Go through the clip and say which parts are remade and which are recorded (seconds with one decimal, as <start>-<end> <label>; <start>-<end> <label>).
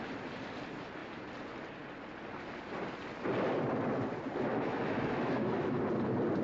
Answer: 0.0-4.5 recorded; 4.5-5.8 remade; 5.8-6.4 recorded